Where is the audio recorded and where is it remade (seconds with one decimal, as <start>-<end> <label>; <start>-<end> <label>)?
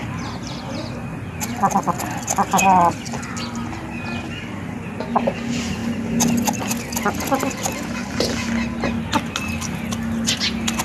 0.0-10.8 recorded